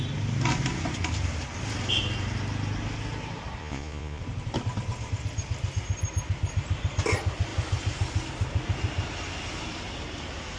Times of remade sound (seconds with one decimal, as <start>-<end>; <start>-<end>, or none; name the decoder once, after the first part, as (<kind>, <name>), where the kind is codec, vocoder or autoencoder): 3.6-4.2 (vocoder, Vocos)